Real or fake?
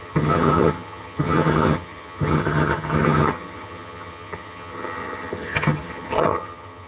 fake